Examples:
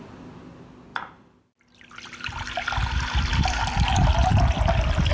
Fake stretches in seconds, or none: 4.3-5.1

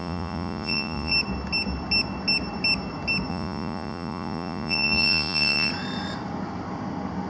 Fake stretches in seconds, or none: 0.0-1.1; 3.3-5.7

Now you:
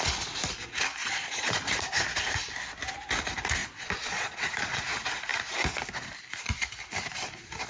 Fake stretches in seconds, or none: 1.0-1.7; 3.6-4.8

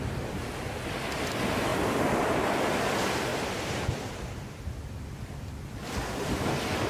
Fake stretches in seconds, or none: 3.3-3.9

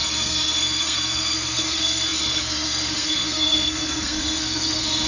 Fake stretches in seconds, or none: 0.0-5.1

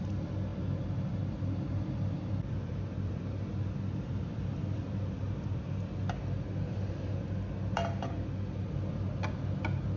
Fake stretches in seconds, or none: 0.5-5.6

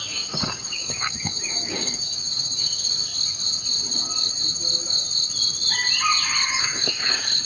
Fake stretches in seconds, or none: 0.0-3.1; 6.6-7.5